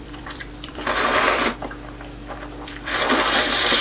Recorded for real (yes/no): no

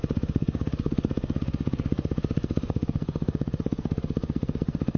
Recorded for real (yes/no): no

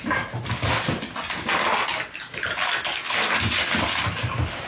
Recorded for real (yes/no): yes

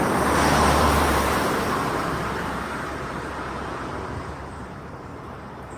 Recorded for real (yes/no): no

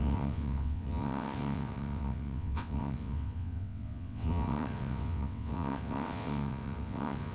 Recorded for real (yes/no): no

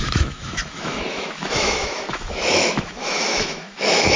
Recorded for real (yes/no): no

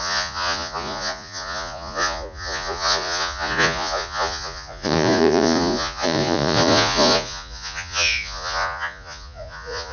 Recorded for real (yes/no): no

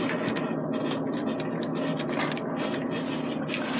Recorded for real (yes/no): yes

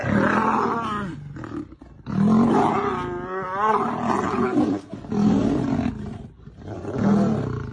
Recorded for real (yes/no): yes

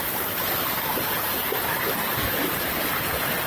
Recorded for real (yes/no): yes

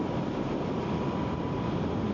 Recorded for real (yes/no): yes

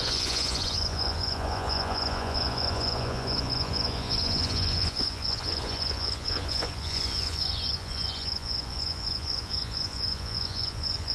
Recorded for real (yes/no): no